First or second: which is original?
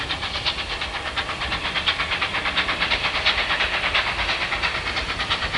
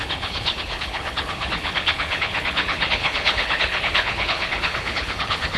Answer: first